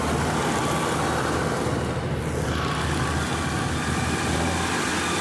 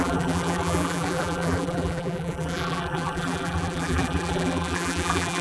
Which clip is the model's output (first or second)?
second